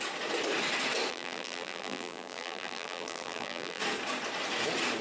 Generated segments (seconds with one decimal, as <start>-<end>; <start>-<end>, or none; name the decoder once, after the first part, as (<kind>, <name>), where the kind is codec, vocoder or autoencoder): 1.1-3.8 (vocoder, BigVGAN v2)